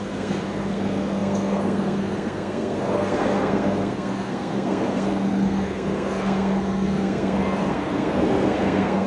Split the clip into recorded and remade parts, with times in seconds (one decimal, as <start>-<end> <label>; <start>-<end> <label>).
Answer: 0.0-9.1 remade